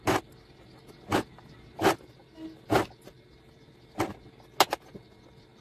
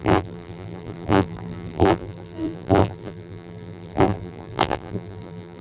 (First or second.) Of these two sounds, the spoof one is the second